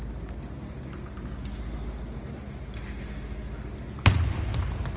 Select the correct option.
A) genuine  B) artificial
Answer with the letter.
A